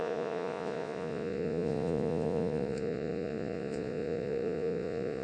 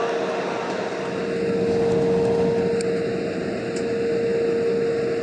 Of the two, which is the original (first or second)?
second